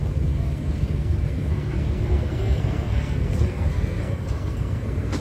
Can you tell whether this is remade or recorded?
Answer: remade